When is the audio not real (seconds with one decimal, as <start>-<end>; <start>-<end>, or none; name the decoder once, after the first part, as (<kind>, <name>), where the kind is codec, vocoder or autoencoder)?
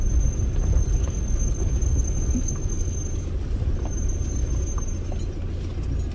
1.0-3.0 (codec, DAC)